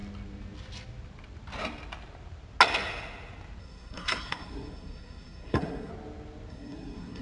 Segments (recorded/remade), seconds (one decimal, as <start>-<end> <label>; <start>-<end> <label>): 0.0-3.6 recorded; 3.6-5.9 remade; 5.9-6.5 recorded; 6.5-7.2 remade